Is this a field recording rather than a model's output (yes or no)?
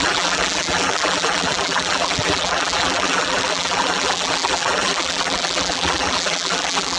no